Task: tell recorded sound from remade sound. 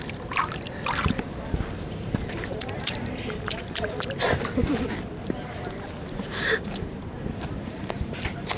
remade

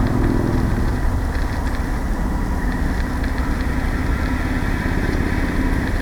remade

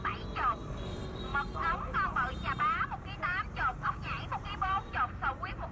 remade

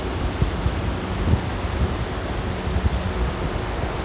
recorded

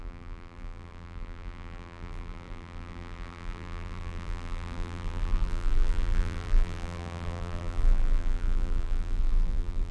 remade